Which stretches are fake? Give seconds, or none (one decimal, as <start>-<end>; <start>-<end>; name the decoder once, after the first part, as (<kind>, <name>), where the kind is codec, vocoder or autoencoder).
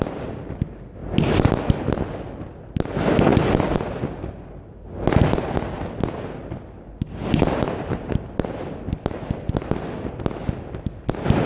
none